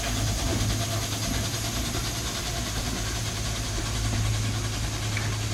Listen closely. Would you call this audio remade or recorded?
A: recorded